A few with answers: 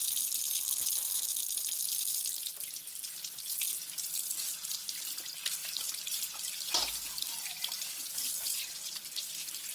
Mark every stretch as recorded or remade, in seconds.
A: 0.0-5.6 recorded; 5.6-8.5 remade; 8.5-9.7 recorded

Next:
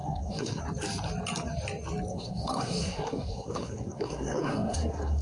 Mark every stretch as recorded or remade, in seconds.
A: 0.0-0.6 remade; 0.6-2.1 recorded; 2.1-5.2 remade

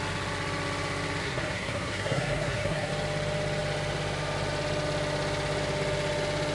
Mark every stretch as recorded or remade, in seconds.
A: 0.0-1.2 recorded; 1.2-2.9 remade; 2.9-6.5 recorded

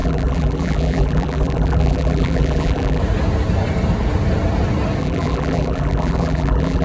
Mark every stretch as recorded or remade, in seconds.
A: 0.0-3.0 remade; 3.0-5.0 recorded; 5.0-6.8 remade

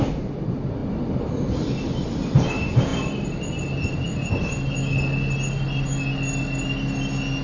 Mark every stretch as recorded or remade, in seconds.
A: 0.0-7.4 recorded